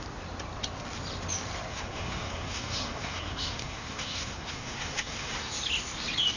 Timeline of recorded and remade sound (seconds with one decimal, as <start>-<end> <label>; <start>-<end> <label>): 0.0-1.7 recorded; 1.7-5.5 remade; 5.5-6.4 recorded